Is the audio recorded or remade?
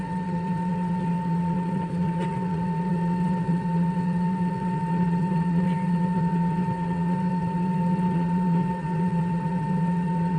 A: remade